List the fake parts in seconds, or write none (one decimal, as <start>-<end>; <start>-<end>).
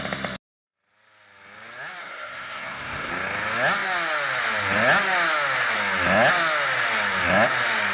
2.0-3.1